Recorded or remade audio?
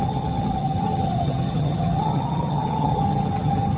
remade